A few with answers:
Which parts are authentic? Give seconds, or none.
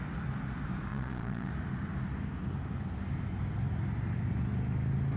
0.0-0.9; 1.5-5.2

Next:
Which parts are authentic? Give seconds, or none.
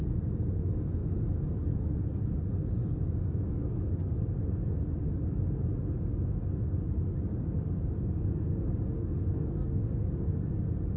0.0-2.8; 4.4-7.3; 10.5-11.0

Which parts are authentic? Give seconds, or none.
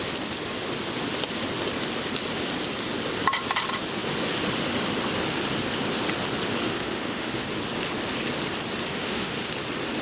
0.0-6.6; 7.5-8.9; 9.5-10.0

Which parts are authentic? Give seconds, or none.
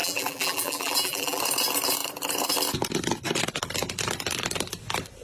1.4-5.2